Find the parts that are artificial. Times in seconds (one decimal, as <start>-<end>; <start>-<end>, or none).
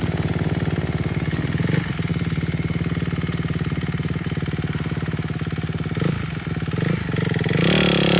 none